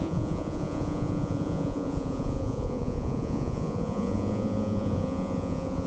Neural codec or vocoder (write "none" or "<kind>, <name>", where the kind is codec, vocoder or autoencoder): vocoder, Vocos